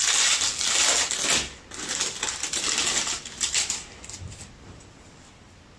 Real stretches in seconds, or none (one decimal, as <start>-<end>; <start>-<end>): 0.0-5.8